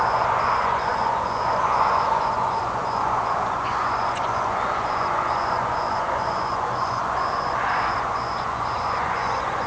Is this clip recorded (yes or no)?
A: no